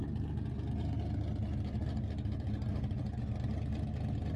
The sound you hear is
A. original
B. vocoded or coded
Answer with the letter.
A